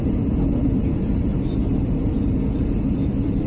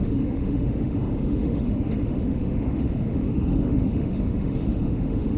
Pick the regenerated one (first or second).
second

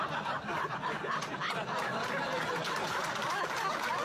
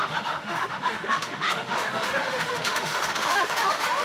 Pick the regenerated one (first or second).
second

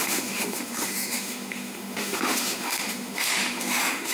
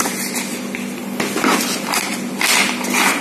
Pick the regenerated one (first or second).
first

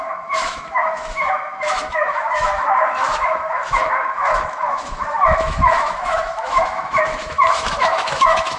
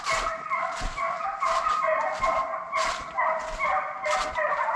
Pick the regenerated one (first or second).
first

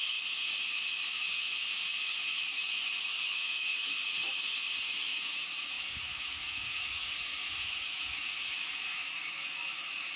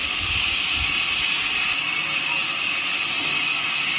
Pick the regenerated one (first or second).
first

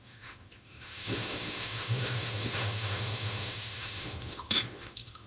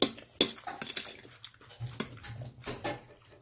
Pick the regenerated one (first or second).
first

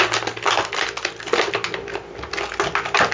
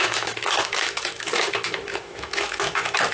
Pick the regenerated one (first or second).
second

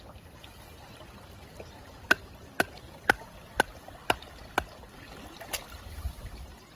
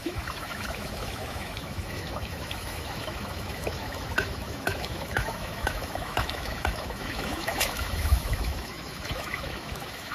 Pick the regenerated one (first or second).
second